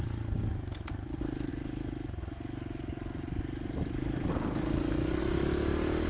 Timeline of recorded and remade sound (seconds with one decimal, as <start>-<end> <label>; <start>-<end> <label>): 0.0-6.1 recorded